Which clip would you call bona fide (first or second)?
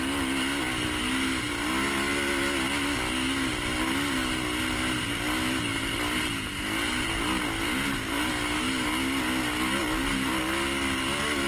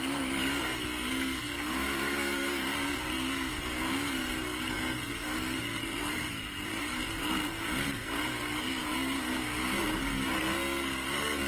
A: first